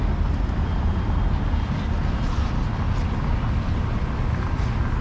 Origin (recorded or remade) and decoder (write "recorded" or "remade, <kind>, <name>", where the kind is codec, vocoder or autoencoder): recorded